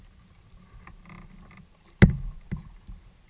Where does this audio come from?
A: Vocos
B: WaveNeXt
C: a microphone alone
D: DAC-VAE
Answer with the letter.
C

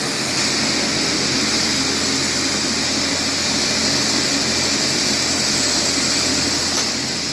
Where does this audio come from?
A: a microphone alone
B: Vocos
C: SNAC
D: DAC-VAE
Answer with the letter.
A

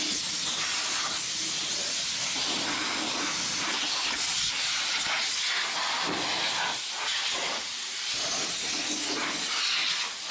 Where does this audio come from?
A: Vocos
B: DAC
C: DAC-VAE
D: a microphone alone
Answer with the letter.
D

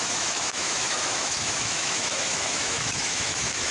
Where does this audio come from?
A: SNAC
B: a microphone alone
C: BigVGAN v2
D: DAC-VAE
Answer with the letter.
D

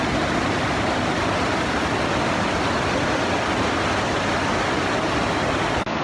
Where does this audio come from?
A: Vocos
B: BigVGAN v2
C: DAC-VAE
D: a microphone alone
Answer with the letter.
D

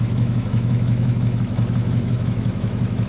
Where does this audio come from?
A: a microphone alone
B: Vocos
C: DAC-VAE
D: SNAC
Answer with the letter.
C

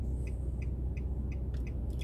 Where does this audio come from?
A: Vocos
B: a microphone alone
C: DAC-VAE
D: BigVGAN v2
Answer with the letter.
B